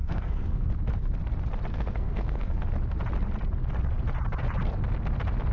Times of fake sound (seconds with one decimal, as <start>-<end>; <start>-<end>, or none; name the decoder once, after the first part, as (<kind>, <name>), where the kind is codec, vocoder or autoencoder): 0.0-0.7 (codec, SNAC); 1.7-2.6